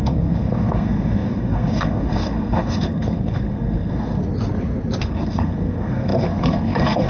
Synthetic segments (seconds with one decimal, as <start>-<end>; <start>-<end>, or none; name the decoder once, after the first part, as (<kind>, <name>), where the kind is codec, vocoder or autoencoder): 0.0-4.2 (codec, SNAC); 5.0-7.1